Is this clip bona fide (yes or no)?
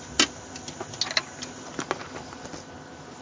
yes